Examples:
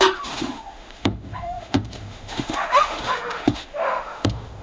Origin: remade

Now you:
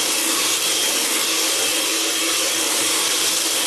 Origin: recorded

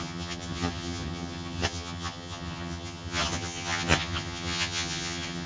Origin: remade